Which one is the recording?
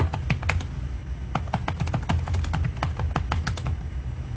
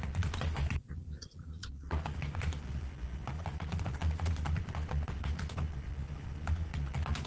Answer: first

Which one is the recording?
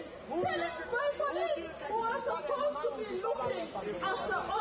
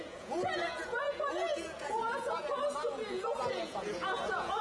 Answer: first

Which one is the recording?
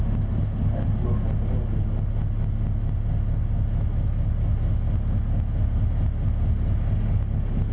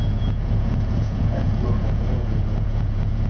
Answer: first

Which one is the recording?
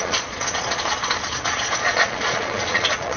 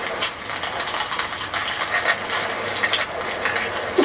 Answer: second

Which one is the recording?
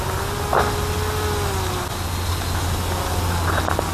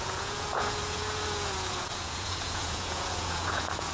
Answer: first